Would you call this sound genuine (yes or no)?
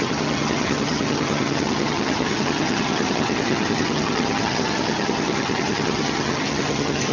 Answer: no